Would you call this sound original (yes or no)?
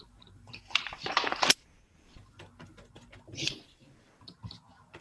no